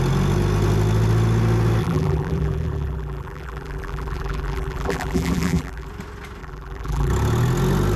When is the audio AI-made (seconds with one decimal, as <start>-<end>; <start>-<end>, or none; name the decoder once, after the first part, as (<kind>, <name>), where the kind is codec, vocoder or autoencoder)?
1.8-5.9 (vocoder, BigVGAN v2); 6.4-7.1